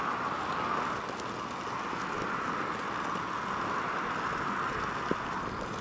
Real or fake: real